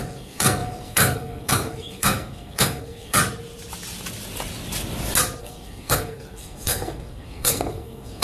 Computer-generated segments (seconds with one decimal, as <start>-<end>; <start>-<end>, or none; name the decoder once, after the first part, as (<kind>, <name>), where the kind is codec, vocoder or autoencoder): 0.0-3.2 (codec, SNAC); 5.4-8.2